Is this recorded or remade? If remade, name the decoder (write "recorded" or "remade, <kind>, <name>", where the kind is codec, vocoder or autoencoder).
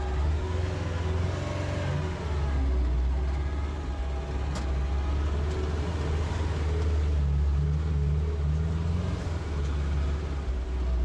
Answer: recorded